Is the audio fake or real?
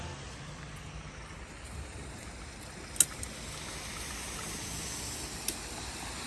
real